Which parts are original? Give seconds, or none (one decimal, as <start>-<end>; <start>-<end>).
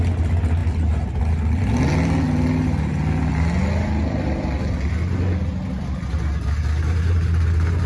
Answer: 0.0-7.9